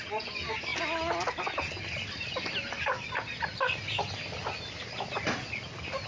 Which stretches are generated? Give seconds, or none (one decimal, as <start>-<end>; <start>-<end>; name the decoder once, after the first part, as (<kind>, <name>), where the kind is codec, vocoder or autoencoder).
none